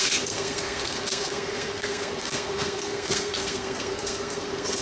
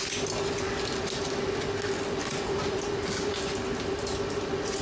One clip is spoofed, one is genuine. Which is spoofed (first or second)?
first